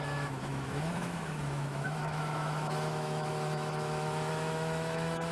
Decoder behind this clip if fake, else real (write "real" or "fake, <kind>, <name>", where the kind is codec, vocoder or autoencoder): fake, autoencoder, DAC-VAE